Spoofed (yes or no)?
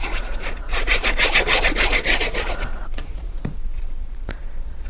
yes